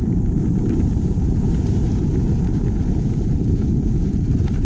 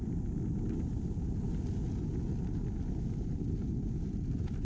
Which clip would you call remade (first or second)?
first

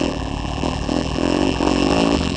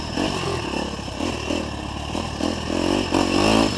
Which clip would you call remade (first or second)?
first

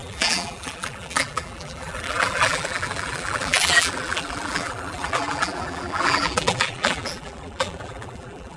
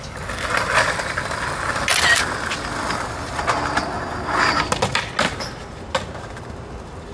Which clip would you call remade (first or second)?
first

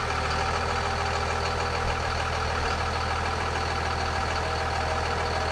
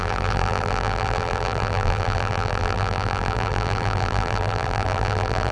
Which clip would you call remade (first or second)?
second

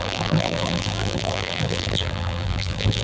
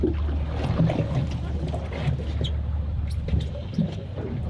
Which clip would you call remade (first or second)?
first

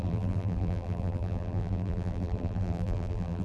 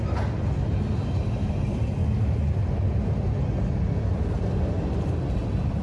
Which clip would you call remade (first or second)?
first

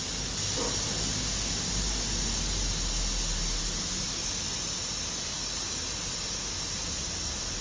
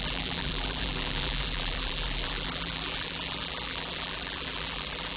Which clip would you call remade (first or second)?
second